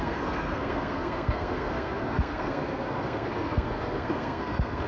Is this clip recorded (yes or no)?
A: no